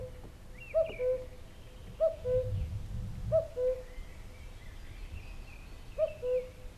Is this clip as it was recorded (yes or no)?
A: yes